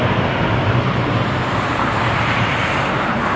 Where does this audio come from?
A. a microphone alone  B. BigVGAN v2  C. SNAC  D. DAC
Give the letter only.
B